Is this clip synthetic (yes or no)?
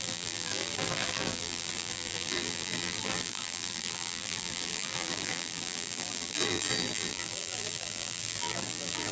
yes